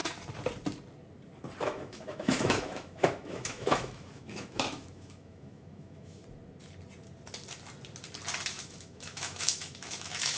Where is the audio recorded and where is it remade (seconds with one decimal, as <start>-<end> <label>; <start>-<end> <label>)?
0.0-1.6 recorded; 1.6-6.2 remade; 6.2-8.5 recorded; 8.5-10.4 remade